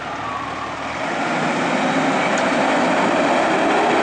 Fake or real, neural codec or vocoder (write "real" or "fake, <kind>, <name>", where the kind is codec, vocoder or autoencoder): real